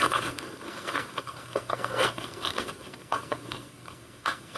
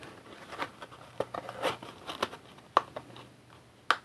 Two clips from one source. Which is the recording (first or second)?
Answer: second